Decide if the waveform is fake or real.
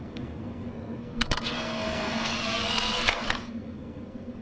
fake